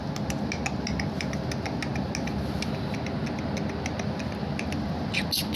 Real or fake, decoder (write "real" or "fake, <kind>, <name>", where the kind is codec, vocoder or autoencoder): real